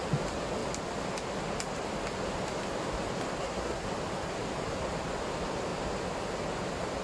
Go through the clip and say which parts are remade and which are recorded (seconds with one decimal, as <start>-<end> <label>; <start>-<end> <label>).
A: 0.0-3.4 recorded; 3.4-3.9 remade; 3.9-7.0 recorded

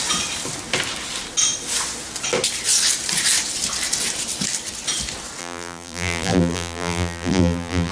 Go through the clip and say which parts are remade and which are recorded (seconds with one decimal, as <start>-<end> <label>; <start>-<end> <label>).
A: 0.0-5.4 recorded; 5.4-7.9 remade

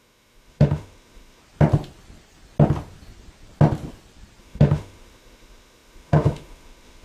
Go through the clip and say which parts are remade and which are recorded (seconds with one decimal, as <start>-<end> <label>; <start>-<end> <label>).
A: 0.0-1.4 remade; 1.4-4.4 recorded; 4.4-7.0 remade